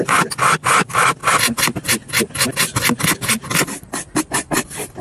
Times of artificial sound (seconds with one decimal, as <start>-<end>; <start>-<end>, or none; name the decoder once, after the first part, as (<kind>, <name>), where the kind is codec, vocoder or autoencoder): none